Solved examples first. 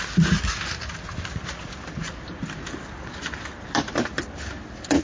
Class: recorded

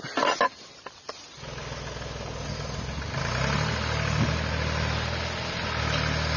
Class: recorded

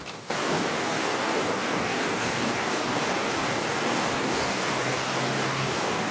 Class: remade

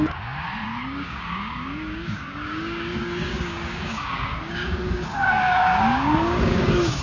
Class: remade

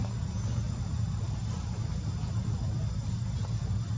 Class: recorded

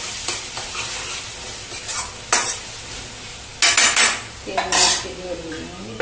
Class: recorded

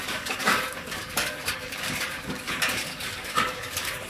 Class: remade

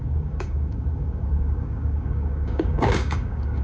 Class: remade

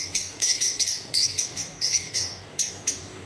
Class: remade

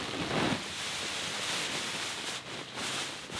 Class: recorded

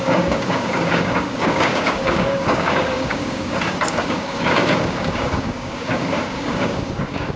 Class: remade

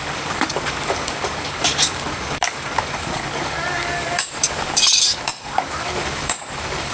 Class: remade